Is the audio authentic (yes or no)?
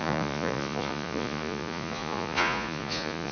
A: no